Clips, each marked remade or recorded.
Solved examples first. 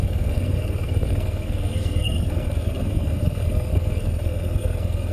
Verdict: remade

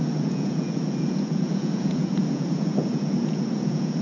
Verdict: remade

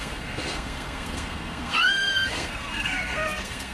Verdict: remade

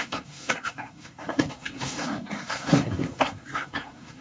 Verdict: remade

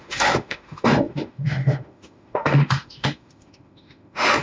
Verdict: remade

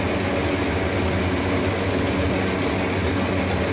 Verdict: recorded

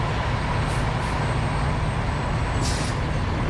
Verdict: recorded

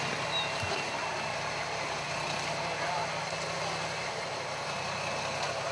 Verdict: recorded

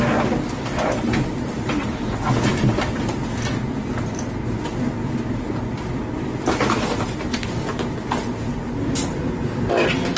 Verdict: recorded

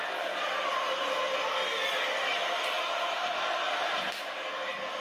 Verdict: recorded